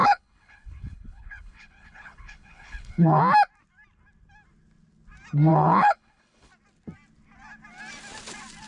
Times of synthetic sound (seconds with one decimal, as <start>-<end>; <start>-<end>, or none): 0.0-3.2; 5.5-6.5